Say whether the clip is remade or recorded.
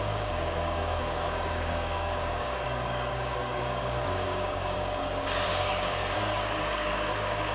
remade